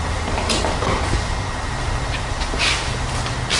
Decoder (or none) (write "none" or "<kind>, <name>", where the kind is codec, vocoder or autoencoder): none